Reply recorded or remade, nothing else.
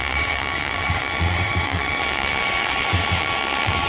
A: remade